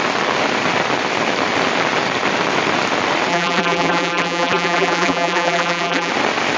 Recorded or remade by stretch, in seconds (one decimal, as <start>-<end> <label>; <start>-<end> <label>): 0.0-3.3 recorded; 3.3-6.1 remade; 6.1-6.6 recorded